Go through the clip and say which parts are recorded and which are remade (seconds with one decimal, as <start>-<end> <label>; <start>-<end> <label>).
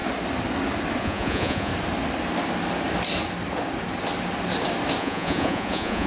0.0-1.0 recorded; 1.0-1.7 remade; 1.7-5.0 recorded; 5.0-6.1 remade